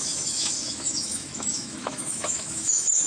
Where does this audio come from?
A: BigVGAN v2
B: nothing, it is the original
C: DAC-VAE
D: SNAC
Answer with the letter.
C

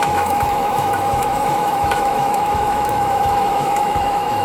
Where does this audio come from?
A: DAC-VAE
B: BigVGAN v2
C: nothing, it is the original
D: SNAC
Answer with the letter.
A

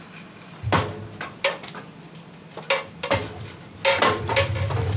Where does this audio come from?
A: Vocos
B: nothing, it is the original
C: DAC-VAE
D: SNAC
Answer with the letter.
B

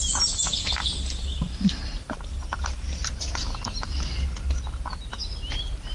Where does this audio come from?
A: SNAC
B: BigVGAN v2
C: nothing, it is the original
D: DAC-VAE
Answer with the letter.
C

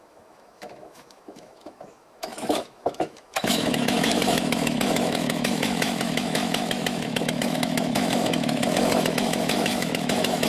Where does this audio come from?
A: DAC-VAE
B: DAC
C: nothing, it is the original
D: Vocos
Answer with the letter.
A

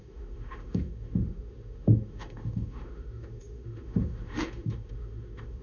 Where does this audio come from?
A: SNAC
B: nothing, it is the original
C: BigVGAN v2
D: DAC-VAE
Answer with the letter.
D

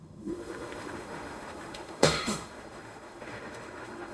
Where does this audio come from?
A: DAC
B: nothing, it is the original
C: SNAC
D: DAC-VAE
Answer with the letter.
D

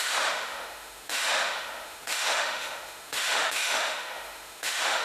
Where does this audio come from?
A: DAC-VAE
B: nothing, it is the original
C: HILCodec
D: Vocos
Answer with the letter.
A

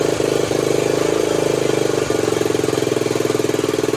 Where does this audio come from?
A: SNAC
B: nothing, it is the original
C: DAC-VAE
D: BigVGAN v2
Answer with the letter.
B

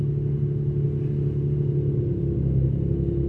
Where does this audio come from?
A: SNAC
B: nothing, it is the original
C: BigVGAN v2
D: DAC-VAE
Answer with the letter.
B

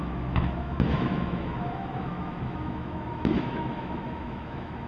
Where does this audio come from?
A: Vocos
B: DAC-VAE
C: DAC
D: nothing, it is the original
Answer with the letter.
B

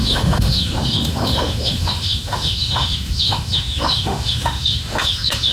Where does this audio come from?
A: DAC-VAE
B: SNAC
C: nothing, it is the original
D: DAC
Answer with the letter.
A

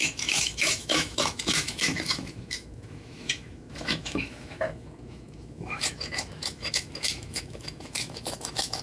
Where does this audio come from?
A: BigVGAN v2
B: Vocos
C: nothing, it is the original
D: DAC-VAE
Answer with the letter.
D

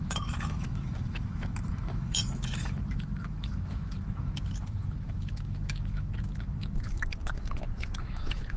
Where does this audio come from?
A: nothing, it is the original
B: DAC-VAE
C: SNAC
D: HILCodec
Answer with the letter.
B